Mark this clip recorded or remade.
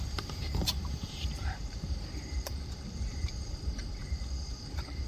remade